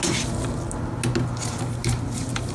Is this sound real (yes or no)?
yes